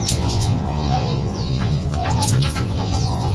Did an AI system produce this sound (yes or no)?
yes